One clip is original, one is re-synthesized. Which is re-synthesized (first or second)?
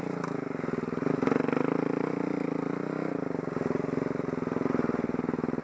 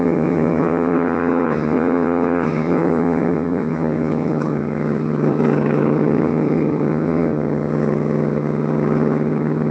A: second